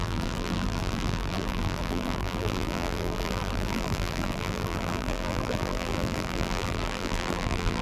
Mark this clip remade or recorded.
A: remade